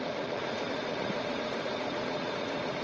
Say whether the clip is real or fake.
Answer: fake